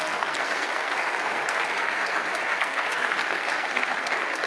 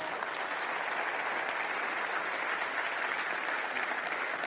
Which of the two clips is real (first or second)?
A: second